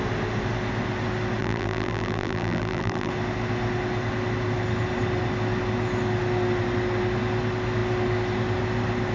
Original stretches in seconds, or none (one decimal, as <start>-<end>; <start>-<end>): 0.0-1.4; 3.1-9.1